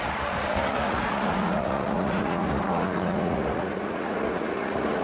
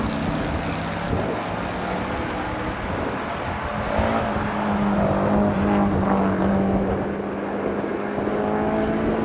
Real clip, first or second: second